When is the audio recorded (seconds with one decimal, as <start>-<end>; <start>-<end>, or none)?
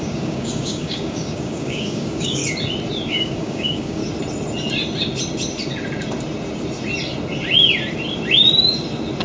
2.4-3.1; 4.0-9.2